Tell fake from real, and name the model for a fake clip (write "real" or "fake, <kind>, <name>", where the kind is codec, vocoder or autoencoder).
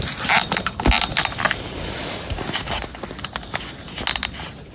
real